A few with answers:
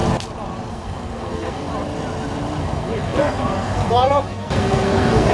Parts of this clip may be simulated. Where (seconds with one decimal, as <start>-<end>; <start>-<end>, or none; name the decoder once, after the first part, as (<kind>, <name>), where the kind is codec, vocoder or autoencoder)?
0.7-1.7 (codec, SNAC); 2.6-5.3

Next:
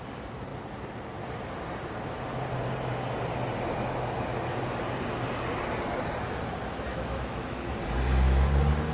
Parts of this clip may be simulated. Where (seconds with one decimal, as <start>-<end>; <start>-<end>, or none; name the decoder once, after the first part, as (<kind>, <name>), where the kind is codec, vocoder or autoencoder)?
6.9-7.7 (autoencoder, DAC-VAE)

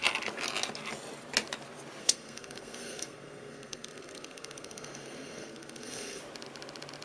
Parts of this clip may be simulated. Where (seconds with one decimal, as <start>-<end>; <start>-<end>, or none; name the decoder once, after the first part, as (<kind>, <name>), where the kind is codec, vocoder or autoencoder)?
2.0-6.2 (codec, SNAC)

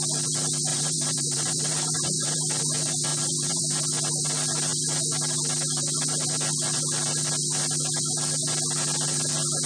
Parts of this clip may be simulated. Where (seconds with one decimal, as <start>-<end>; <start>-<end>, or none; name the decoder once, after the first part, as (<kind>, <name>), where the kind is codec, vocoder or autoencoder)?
0.7-2.6 (vocoder, BigVGAN v2); 3.1-3.8